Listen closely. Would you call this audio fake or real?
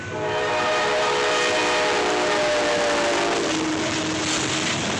real